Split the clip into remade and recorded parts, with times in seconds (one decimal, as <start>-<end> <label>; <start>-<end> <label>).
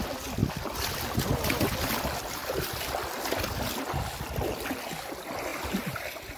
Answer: 0.0-5.5 recorded; 5.5-6.4 remade